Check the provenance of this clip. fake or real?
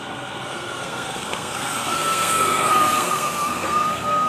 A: fake